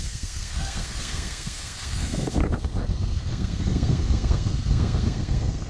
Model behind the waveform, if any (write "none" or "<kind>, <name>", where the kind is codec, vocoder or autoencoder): codec, SNAC